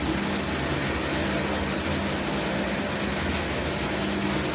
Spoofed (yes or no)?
no